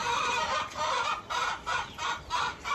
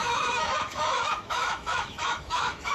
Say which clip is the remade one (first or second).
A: second